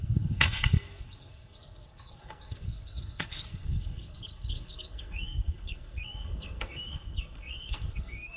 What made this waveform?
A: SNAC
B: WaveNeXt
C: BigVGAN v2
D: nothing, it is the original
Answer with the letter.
A